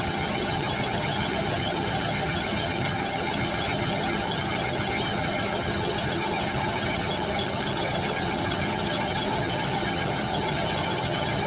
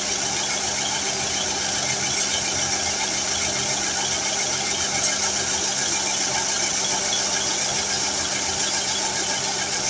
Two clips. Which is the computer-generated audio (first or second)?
first